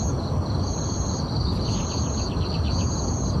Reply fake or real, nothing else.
real